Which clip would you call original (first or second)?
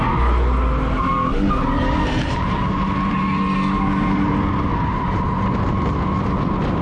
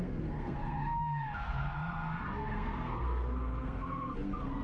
first